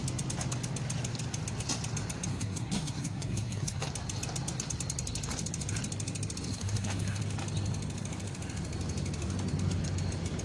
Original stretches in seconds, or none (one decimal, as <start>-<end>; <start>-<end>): 0.0-2.3; 3.9-6.5; 7.2-10.4